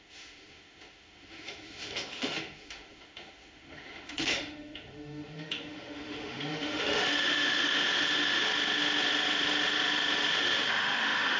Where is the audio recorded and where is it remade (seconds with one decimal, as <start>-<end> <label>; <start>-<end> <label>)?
0.0-8.5 remade; 8.5-10.3 recorded; 10.3-11.4 remade